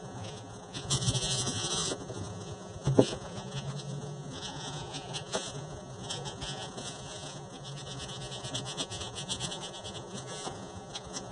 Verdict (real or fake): fake